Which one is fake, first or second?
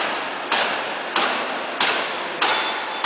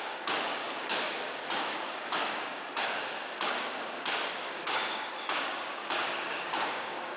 second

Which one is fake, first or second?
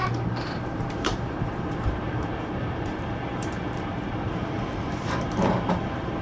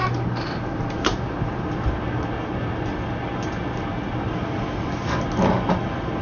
first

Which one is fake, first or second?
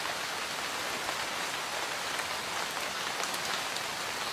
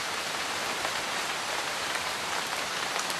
second